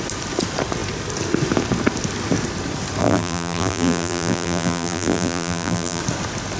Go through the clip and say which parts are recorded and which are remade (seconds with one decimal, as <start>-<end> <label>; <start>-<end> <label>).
0.0-3.0 recorded; 3.0-6.0 remade; 6.0-6.6 recorded

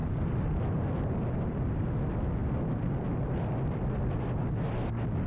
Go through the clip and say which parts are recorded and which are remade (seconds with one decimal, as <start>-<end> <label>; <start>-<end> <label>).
0.0-1.8 remade; 1.8-2.4 recorded; 2.4-4.2 remade; 4.2-5.3 recorded